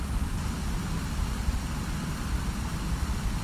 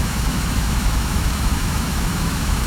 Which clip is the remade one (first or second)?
second